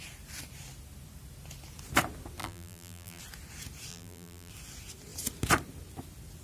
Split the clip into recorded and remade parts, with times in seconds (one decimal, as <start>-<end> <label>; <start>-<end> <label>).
0.0-2.4 recorded; 2.4-3.2 remade; 3.2-3.9 recorded; 3.9-4.5 remade; 4.5-6.4 recorded